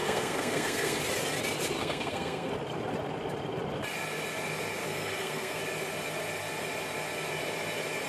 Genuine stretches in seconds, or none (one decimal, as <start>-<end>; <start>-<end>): 1.0-1.8; 2.5-4.8; 5.6-8.1